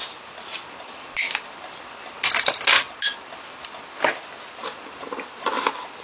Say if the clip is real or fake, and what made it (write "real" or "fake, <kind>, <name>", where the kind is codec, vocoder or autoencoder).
real